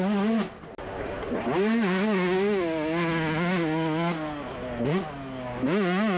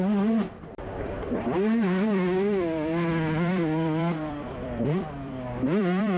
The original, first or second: first